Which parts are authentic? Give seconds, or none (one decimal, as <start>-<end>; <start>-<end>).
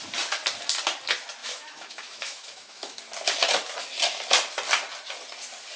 0.0-1.4; 3.0-5.8